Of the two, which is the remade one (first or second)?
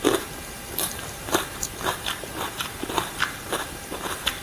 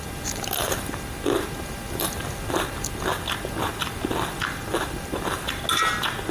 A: first